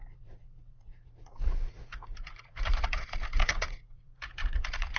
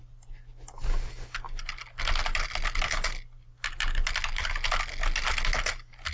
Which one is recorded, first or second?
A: second